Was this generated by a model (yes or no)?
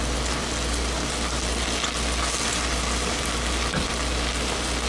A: no